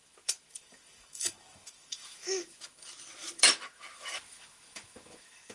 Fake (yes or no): yes